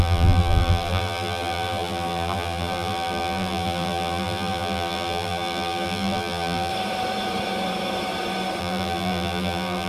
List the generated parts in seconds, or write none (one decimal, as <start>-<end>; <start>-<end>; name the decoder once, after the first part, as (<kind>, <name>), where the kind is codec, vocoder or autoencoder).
0.0-6.7 (vocoder, BigVGAN v2); 8.6-9.9